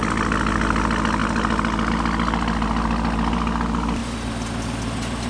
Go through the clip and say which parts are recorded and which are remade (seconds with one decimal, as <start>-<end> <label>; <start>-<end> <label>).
0.0-5.3 recorded